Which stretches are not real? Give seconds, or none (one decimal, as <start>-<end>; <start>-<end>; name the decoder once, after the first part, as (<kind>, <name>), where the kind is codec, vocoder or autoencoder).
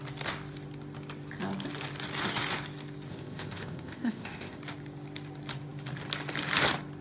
3.1-4.6 (codec, ZipCodec)